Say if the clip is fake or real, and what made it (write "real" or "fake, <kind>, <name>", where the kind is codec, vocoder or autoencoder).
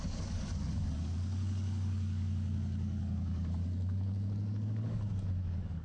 fake, codec, DAC